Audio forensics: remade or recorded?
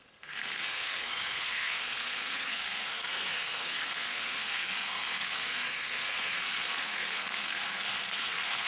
remade